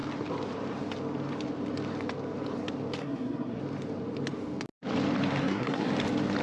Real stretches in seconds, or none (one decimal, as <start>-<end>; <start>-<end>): 0.0-3.0; 3.6-5.4; 5.9-6.4